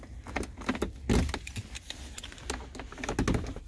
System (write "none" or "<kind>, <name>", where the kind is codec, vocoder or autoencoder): none